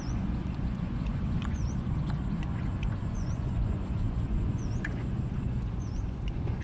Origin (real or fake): fake